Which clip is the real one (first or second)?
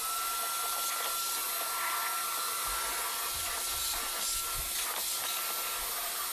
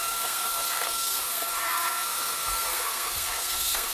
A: first